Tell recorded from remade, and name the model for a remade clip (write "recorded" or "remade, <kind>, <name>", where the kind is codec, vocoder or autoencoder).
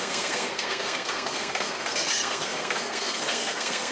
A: remade, codec, SNAC